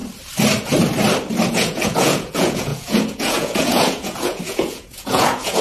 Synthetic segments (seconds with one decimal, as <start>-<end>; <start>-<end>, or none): 1.5-5.6